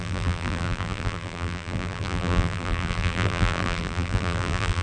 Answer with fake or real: fake